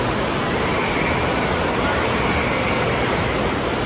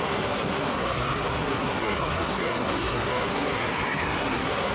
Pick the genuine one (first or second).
first